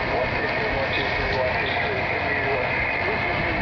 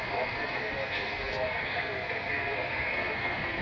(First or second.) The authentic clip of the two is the first